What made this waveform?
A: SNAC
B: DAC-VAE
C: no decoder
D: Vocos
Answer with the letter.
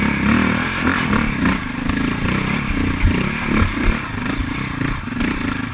C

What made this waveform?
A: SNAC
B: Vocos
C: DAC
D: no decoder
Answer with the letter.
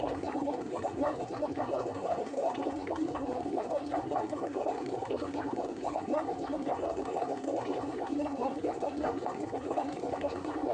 A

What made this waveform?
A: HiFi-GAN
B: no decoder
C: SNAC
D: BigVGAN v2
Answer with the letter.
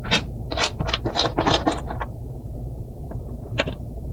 D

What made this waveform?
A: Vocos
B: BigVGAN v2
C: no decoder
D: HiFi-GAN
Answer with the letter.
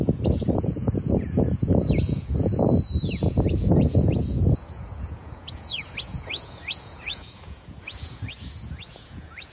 A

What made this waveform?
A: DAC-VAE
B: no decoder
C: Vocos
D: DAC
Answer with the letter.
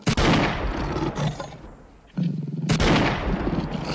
B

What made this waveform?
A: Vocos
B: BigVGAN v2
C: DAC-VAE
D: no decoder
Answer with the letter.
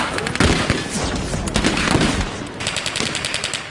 D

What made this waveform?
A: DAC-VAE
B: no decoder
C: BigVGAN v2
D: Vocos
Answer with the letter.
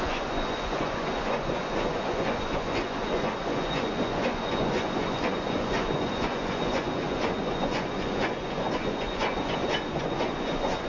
D